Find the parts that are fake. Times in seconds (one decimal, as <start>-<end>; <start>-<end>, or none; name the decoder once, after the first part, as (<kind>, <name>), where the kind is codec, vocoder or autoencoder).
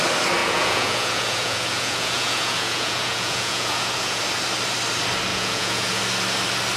0.4-4.2 (vocoder, Vocos); 5.3-6.0